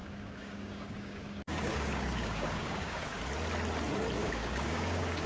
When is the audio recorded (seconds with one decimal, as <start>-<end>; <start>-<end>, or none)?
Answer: 3.2-4.2